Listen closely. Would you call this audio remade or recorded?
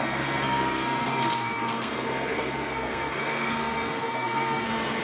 remade